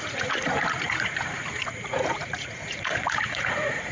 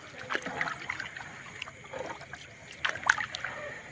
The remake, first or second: first